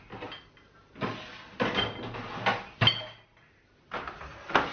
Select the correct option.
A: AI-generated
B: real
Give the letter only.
B